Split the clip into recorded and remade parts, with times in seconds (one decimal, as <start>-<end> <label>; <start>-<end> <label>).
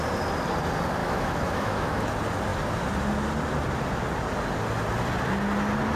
0.0-1.0 recorded; 1.0-2.0 remade; 2.0-6.0 recorded